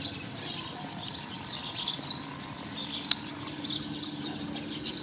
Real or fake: real